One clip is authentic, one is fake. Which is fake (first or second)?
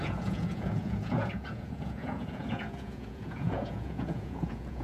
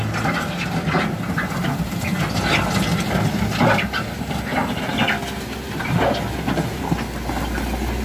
first